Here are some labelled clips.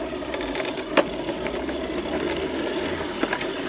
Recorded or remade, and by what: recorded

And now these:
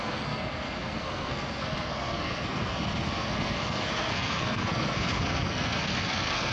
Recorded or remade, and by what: remade, codec, SNAC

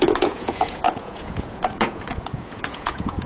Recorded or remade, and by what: remade, vocoder, Vocos